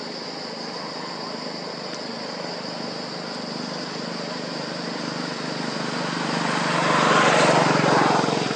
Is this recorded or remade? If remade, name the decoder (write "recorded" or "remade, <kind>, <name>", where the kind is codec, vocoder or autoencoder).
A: recorded